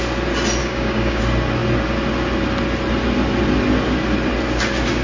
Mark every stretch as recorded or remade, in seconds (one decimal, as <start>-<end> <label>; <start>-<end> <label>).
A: 0.0-0.6 recorded; 0.6-1.2 remade; 1.2-5.0 recorded